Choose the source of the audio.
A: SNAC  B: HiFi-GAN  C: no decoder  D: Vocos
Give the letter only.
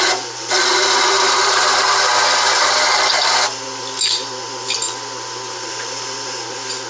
C